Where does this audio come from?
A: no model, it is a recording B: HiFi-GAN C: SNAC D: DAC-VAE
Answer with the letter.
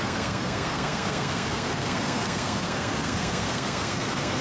C